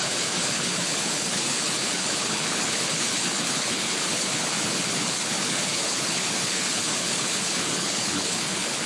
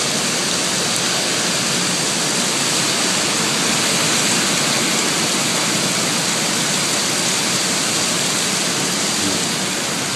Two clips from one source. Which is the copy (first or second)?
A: first